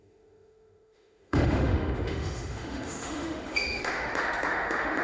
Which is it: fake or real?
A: fake